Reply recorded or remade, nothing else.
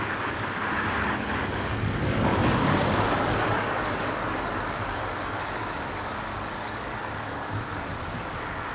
remade